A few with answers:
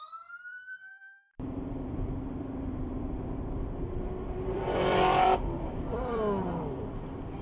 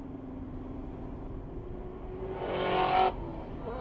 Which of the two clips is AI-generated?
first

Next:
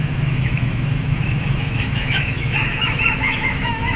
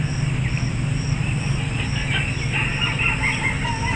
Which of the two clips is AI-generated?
first